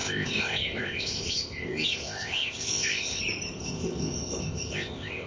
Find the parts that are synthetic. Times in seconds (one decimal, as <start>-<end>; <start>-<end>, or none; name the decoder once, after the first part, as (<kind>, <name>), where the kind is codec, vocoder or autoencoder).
0.0-3.2 (codec, ZipCodec); 3.6-5.3